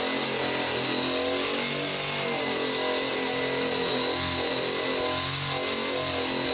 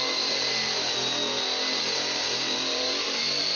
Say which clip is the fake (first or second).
second